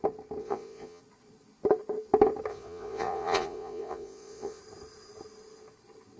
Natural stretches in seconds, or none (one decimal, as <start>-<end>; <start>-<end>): 0.0-0.4; 1.0-2.5; 4.6-6.2